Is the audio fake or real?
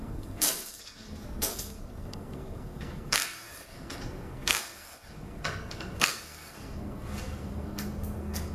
fake